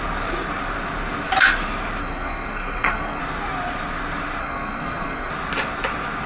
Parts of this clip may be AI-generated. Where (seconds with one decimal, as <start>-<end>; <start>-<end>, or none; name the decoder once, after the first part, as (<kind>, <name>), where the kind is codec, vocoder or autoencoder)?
2.0-3.2 (codec, SNAC); 4.4-5.3